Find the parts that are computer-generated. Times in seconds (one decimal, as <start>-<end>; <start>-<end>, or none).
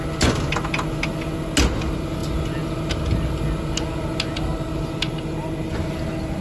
none